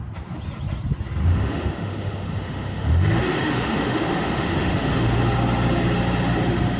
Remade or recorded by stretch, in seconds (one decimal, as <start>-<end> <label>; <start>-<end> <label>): 0.0-1.3 recorded; 1.3-5.2 remade; 5.2-6.8 recorded